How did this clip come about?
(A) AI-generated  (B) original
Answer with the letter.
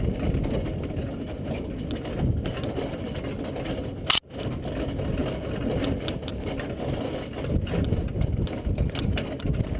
B